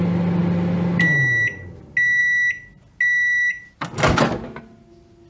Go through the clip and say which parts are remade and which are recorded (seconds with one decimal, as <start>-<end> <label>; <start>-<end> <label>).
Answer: 0.0-5.3 recorded